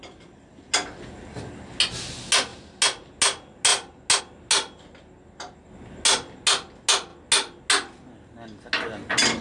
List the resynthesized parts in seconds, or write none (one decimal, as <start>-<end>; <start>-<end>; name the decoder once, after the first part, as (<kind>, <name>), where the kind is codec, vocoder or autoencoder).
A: none